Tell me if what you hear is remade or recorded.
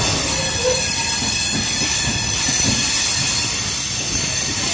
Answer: recorded